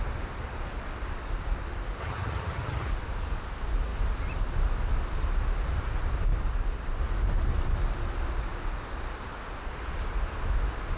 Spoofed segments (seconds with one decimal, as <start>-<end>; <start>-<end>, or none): 2.0-2.9